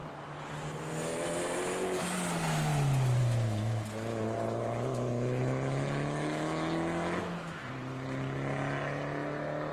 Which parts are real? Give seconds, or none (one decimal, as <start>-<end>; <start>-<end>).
0.0-3.2; 7.7-9.7